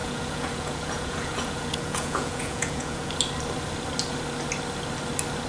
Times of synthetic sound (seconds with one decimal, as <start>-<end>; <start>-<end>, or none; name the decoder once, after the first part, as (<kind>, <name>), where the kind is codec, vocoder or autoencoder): 0.0-3.1 (vocoder, Vocos)